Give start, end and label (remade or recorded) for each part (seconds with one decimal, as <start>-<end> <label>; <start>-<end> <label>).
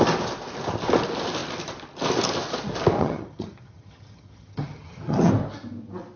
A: 0.0-3.0 recorded; 3.0-5.3 remade; 5.3-6.2 recorded